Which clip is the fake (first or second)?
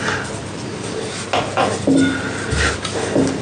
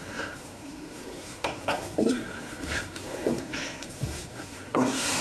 second